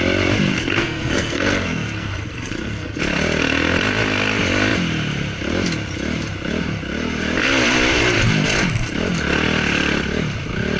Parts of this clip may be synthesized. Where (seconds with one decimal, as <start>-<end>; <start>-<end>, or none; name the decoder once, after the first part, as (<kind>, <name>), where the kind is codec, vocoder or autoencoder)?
0.5-3.0 (codec, SNAC)